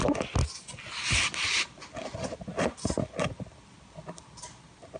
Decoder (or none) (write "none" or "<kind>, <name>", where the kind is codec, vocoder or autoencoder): none